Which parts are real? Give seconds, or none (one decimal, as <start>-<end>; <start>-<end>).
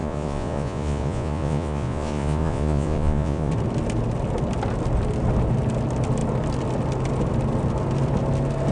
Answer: 3.5-8.7